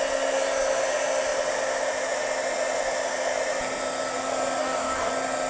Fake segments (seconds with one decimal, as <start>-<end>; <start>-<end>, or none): 4.6-5.1